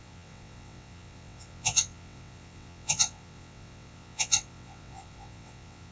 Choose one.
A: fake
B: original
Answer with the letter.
A